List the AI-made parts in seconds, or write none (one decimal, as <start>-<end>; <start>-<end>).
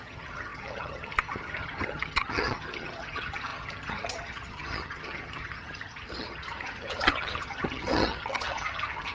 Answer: 0.0-9.1